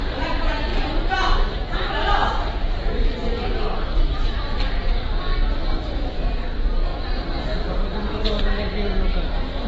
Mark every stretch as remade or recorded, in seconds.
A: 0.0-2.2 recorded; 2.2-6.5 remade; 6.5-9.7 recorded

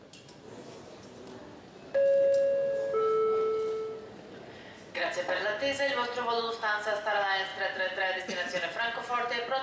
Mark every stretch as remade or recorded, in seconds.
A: 0.0-9.6 recorded

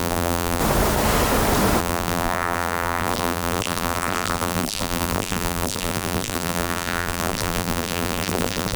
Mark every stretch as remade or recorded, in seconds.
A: 0.0-0.6 remade; 0.6-1.8 recorded; 1.8-8.8 remade